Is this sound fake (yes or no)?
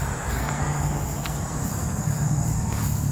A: yes